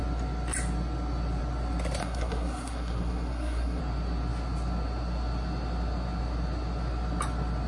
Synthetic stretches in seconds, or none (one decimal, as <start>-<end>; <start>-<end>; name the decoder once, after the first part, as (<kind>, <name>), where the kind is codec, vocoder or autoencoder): 2.0-3.8 (codec, SNAC)